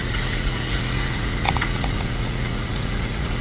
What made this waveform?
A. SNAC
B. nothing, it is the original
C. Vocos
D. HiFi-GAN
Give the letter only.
C